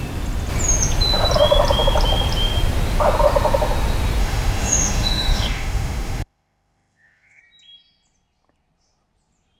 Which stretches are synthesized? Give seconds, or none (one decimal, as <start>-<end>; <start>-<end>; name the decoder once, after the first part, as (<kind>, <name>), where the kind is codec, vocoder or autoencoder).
4.2-7.4 (autoencoder, DAC-VAE)